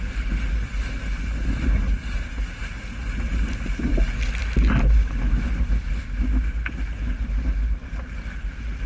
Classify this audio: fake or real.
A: real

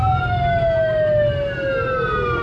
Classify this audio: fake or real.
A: real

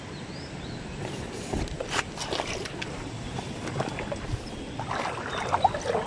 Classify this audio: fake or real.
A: real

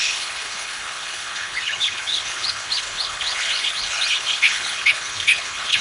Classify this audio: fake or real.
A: fake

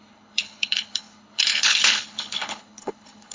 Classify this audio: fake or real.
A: fake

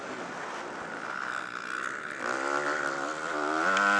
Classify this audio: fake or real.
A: real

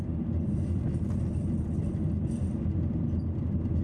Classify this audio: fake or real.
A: real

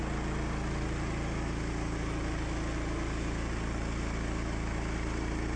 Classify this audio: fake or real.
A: real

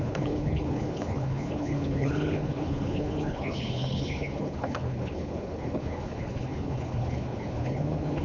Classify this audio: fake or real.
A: fake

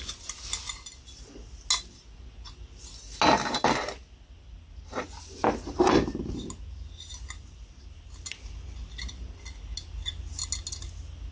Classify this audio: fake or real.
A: real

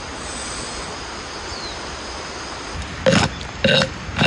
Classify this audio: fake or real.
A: real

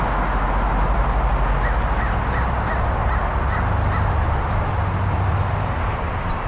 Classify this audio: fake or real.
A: real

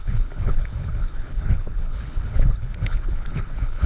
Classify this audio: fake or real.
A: fake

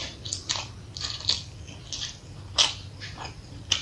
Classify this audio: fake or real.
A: real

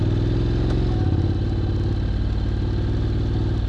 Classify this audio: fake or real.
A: real